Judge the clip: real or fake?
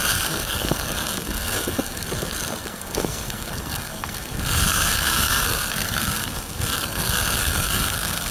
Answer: fake